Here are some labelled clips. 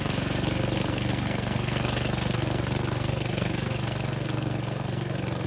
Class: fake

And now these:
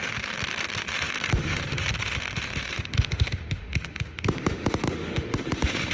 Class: fake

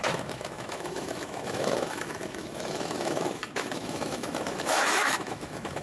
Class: fake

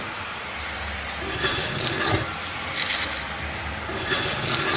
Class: real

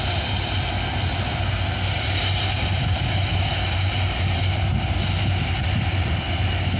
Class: real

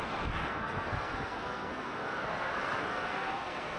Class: fake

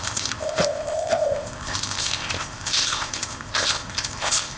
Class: fake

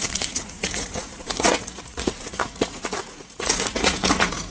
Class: fake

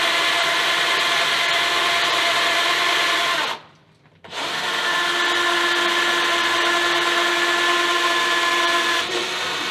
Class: real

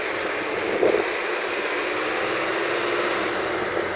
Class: real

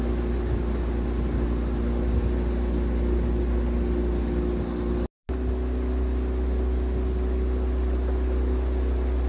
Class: real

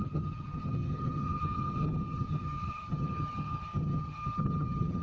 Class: fake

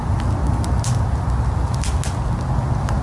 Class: real